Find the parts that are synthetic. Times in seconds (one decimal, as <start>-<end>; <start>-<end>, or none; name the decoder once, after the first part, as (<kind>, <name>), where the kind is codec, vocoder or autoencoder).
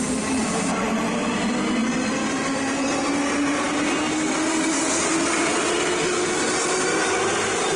0.4-1.0 (vocoder, BigVGAN v2)